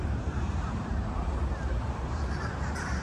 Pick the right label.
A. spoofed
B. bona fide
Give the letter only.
A